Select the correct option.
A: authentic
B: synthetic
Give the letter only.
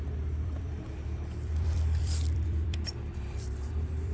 B